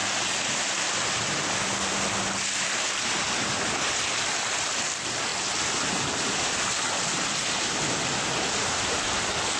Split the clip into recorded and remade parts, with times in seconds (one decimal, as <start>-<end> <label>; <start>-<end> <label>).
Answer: 0.0-9.6 recorded